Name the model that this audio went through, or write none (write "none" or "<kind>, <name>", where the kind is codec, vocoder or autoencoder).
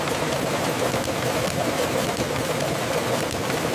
none